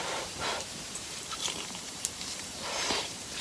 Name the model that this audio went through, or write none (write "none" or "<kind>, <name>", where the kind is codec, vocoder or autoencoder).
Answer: vocoder, BigVGAN v2